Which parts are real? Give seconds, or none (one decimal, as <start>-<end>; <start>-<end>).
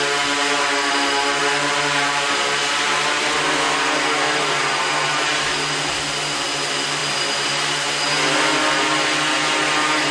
0.0-10.1